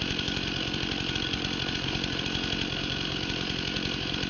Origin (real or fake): fake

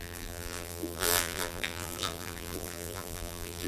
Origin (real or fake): fake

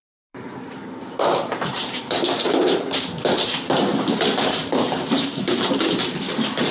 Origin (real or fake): fake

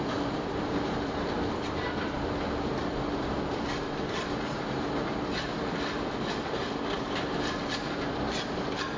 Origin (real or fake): fake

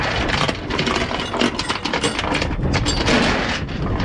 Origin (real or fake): real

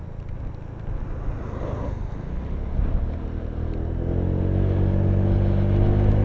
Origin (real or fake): real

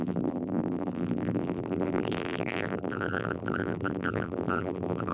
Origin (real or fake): fake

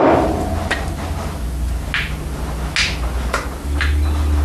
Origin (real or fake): real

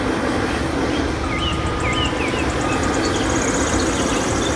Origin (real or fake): real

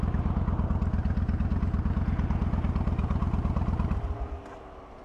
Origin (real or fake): real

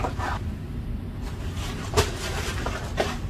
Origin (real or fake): real